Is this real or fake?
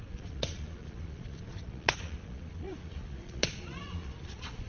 fake